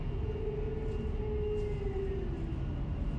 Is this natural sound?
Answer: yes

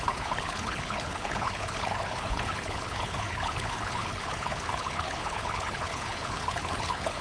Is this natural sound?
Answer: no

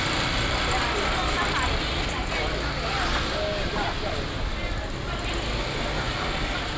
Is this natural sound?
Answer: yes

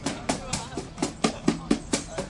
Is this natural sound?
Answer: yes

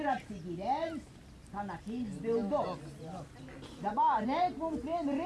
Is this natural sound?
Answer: yes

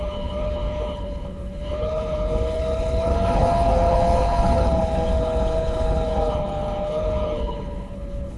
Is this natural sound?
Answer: no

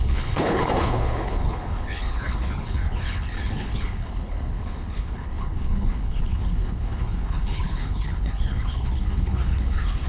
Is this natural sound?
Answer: no